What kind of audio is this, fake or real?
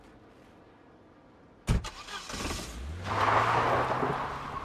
real